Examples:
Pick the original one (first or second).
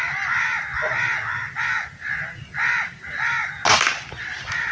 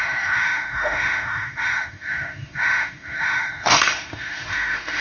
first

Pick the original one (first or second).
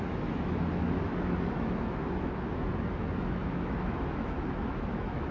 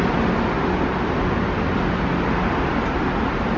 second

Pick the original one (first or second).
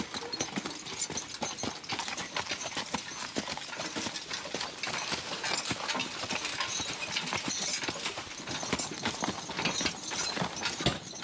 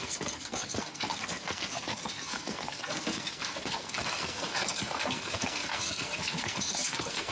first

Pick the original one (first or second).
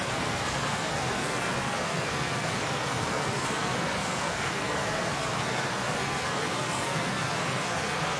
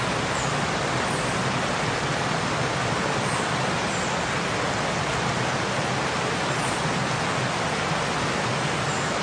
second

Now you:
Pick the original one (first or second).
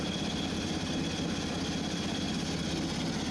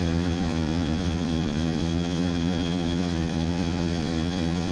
first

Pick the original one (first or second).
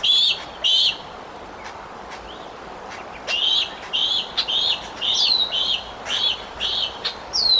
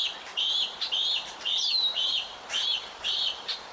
first